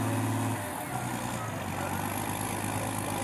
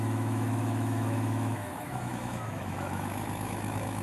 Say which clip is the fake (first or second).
second